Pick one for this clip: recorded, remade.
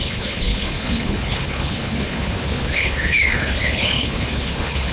remade